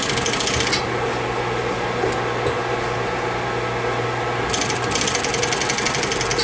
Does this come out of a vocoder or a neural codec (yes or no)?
no